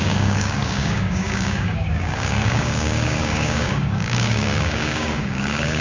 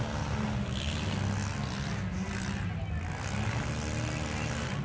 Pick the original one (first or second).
second